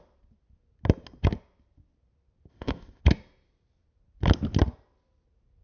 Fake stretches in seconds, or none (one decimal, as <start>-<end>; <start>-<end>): 2.5-3.0